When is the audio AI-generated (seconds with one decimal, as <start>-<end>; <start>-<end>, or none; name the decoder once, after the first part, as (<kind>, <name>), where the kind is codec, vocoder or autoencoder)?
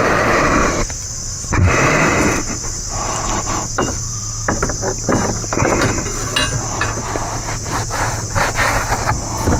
0.6-4.2 (vocoder, BigVGAN v2)